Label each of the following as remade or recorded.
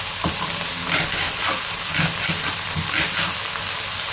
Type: recorded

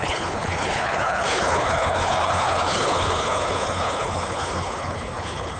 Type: remade